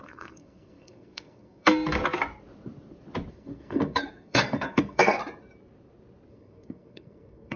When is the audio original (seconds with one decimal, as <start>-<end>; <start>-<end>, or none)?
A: 2.0-3.3; 5.2-6.3